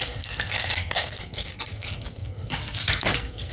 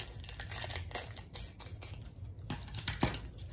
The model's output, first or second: first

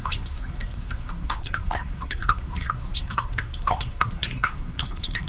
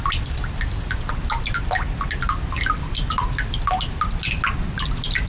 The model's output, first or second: first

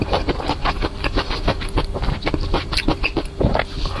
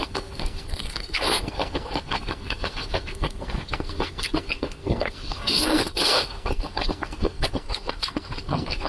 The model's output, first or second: second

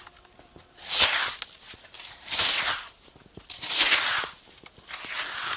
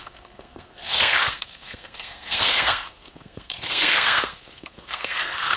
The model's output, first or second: second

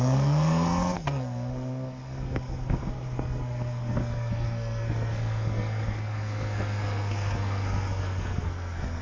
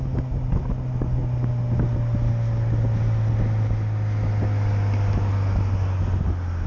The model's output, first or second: first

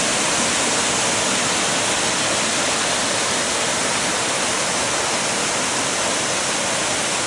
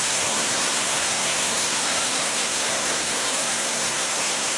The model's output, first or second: second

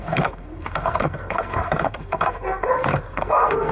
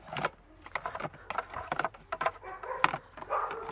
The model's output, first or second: first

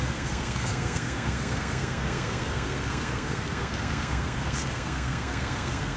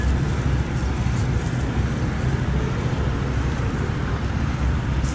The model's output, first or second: first